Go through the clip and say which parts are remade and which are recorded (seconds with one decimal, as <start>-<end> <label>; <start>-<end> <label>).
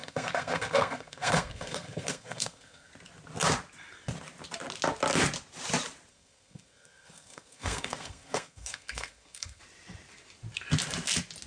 0.0-2.9 remade; 2.9-6.1 recorded; 6.1-9.6 remade; 9.6-11.5 recorded